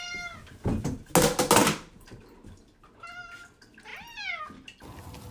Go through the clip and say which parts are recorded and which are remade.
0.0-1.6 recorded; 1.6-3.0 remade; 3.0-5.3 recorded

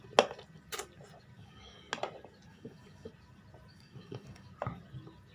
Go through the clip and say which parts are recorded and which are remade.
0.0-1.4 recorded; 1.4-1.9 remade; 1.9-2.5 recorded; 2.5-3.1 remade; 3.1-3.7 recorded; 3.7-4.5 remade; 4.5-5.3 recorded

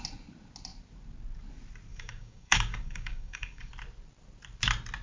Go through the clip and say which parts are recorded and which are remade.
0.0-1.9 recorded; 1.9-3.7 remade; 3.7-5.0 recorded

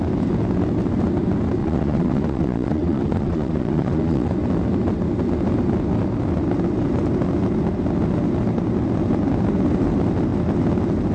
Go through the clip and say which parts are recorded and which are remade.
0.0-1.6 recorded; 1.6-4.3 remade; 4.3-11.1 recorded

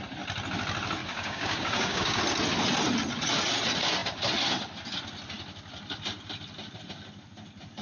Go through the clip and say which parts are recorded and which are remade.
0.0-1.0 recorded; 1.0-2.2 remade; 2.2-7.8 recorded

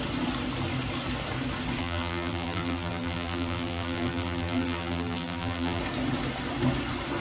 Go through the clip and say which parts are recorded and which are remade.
0.0-1.8 recorded; 1.8-5.8 remade; 5.8-7.2 recorded

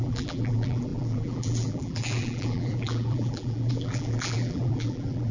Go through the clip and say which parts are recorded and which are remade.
0.0-5.3 remade

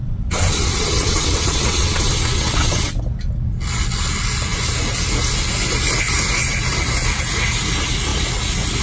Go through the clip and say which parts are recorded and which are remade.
0.0-3.0 remade; 3.0-8.8 recorded